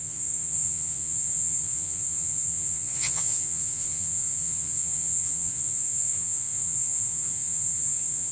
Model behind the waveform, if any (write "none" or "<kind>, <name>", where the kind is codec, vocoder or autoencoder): vocoder, Vocos